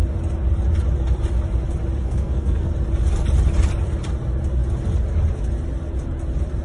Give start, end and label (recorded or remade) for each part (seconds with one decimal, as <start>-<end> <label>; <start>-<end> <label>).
0.0-2.0 recorded; 2.0-2.7 remade; 2.7-6.6 recorded